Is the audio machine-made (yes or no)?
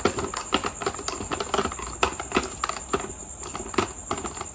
no